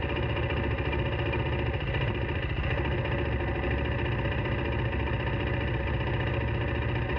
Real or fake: real